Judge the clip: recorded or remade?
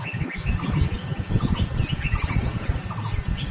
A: recorded